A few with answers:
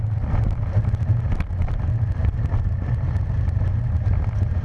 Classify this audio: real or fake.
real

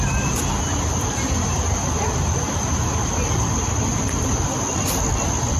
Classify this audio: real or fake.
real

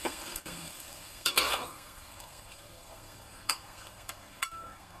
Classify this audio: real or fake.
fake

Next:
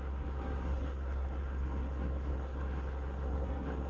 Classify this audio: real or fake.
fake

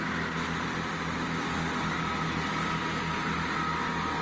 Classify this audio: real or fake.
real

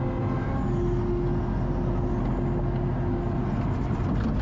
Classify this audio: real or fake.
real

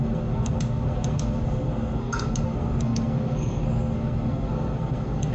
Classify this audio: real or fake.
fake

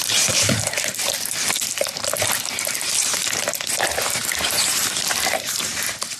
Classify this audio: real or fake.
real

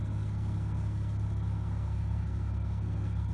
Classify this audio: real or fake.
fake